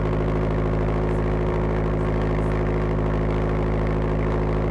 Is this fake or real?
real